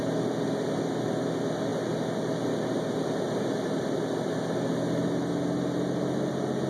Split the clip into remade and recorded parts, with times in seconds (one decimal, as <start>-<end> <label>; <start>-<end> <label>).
0.0-6.7 recorded